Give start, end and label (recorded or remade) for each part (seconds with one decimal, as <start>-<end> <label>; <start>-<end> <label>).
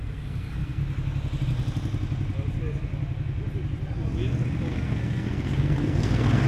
0.0-0.8 remade; 0.8-4.7 recorded; 4.7-6.5 remade